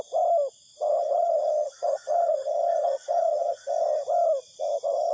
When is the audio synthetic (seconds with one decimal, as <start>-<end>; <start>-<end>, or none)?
0.9-3.7